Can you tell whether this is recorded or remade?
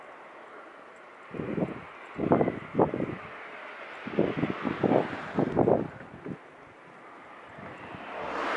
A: recorded